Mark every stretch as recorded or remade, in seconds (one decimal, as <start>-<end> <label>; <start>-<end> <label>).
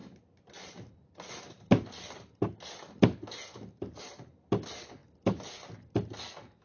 0.0-6.6 recorded